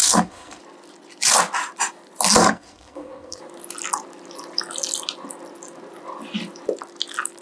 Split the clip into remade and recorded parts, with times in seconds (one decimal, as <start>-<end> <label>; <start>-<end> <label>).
0.0-0.6 remade; 0.6-2.4 recorded; 2.4-3.4 remade; 3.4-7.4 recorded

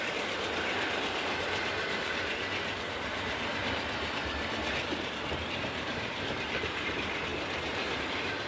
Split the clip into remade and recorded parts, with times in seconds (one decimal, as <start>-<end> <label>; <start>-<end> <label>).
0.0-2.3 remade; 2.3-5.6 recorded; 5.6-8.5 remade

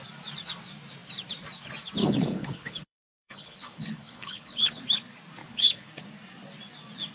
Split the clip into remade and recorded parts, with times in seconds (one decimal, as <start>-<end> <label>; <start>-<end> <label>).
0.0-2.0 recorded; 2.0-4.8 remade; 4.8-5.4 recorded; 5.4-5.9 remade; 5.9-7.1 recorded

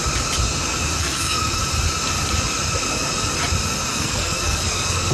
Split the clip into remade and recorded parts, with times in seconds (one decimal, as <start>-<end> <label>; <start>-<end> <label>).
0.0-1.0 recorded; 1.0-1.6 remade; 1.6-3.9 recorded; 3.9-5.1 remade

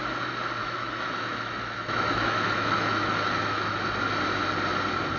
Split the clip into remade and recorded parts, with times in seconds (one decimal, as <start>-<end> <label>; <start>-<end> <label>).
0.0-0.6 recorded; 0.6-3.7 remade; 3.7-5.2 recorded

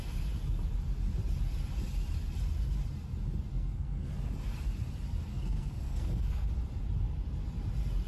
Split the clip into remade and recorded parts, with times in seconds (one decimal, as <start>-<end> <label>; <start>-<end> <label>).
0.0-3.5 recorded; 3.5-4.1 remade; 4.1-5.3 recorded; 5.3-6.5 remade; 6.5-8.1 recorded

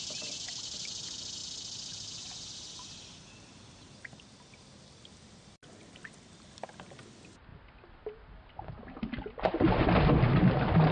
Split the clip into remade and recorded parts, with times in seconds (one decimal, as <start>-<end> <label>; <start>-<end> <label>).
0.0-10.9 recorded